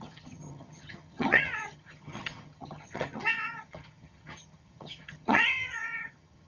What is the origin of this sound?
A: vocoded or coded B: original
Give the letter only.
A